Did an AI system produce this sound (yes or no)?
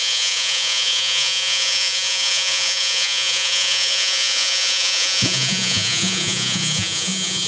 yes